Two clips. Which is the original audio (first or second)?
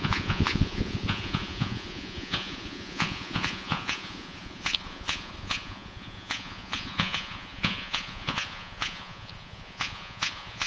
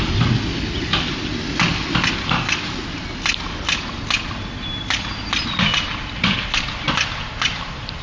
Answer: second